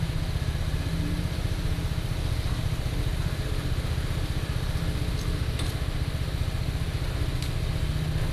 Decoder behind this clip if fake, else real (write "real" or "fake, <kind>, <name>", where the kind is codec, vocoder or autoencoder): real